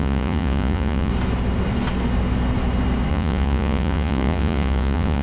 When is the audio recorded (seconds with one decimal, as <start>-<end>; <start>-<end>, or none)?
1.1-3.1